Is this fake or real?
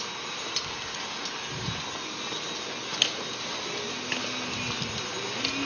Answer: real